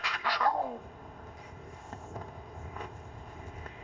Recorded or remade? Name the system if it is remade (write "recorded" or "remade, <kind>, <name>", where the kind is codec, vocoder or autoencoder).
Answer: remade, codec, ZipCodec